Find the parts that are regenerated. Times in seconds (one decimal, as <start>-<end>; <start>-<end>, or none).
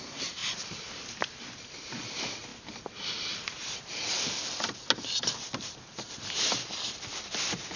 0.0-0.4; 1.2-2.5; 3.0-4.4; 5.3-7.8